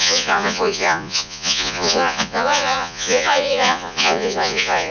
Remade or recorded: remade